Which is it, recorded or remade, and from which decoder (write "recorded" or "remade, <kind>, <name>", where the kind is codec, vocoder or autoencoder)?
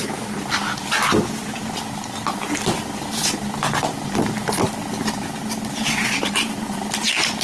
recorded